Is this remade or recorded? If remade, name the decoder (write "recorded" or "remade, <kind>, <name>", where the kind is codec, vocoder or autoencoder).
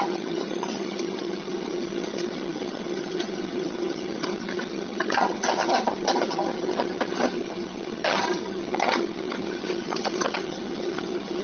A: remade, vocoder, HiFi-GAN